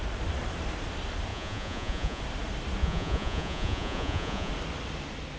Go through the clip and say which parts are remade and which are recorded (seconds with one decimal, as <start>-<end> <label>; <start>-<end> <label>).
0.0-1.3 recorded; 1.3-2.2 remade; 2.2-2.8 recorded; 2.8-4.5 remade; 4.5-5.4 recorded